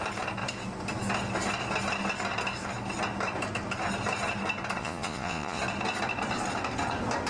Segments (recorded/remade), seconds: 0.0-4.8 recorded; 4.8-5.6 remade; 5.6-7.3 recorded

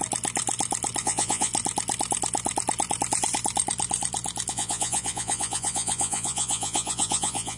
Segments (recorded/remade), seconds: 0.0-1.0 recorded; 1.0-1.5 remade; 1.5-4.5 recorded; 4.5-7.6 remade

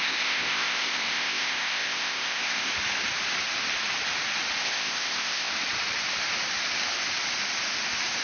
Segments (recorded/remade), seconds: 0.0-2.7 remade; 2.7-4.6 recorded; 4.6-5.5 remade; 5.5-8.2 recorded